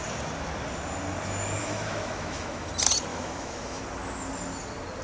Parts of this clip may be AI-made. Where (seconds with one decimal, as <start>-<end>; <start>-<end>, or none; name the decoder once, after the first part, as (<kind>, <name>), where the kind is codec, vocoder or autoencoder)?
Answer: 1.6-2.7 (autoencoder, DAC-VAE); 3.1-3.8